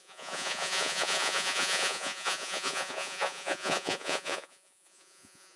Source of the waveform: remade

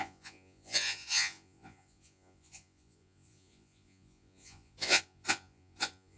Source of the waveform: remade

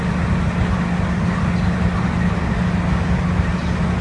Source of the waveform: recorded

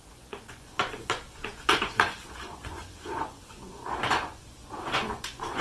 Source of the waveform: remade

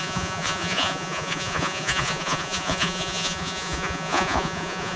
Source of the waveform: remade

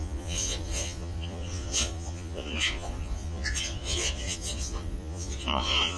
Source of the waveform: remade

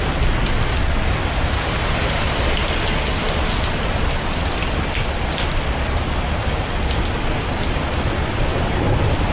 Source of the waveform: recorded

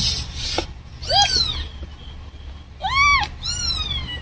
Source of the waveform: recorded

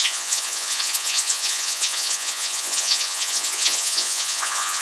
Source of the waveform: remade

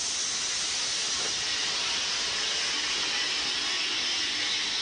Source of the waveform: recorded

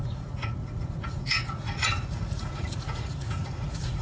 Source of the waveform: remade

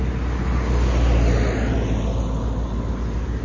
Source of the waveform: recorded